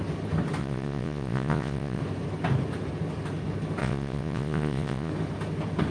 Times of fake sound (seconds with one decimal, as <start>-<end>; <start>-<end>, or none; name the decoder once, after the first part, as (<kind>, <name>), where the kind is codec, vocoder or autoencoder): 0.6-2.0 (vocoder, Vocos); 3.8-5.1